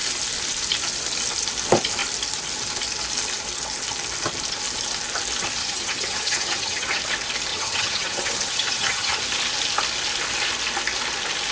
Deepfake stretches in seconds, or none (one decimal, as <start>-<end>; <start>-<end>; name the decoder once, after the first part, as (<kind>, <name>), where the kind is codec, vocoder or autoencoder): 5.6-7.0 (vocoder, HiFi-GAN); 7.5-9.2